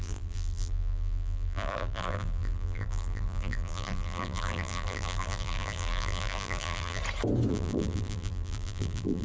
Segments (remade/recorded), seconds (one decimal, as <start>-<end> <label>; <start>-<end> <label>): 0.0-7.0 remade; 7.0-7.5 recorded; 7.5-9.2 remade